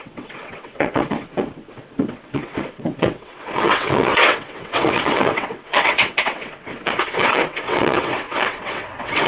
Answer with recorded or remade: remade